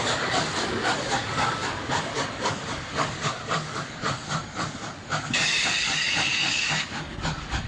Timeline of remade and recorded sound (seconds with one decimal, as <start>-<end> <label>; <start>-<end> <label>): 0.0-7.7 remade